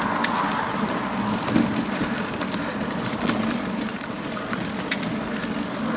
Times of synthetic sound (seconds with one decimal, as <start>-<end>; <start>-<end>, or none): 1.7-5.3